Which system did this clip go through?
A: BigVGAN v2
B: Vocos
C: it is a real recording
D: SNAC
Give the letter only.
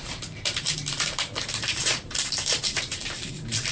A